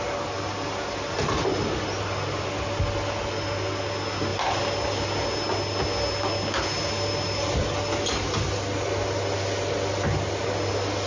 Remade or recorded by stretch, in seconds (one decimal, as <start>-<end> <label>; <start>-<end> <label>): 0.0-11.1 recorded